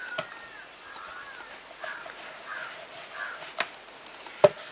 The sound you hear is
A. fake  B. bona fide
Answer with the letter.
B